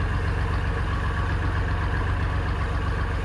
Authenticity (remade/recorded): recorded